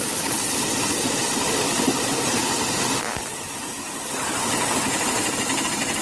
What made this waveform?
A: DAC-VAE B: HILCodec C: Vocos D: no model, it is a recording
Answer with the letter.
D